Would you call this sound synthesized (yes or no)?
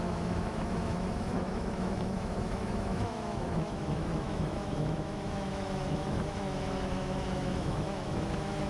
yes